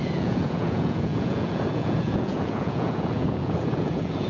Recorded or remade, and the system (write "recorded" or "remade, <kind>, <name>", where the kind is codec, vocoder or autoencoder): remade, vocoder, Vocos